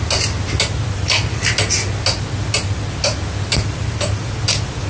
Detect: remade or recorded recorded